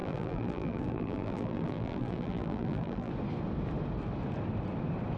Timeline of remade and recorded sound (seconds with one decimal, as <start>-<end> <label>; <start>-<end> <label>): 0.0-3.1 remade; 3.1-5.2 recorded